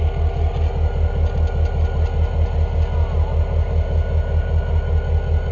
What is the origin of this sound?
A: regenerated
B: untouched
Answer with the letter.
B